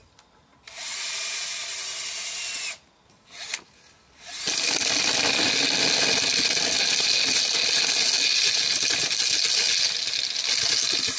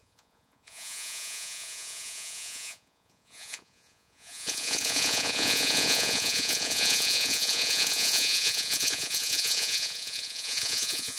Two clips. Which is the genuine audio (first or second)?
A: first